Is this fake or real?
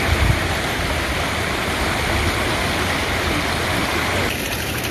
real